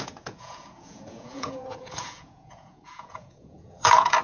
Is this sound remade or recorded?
remade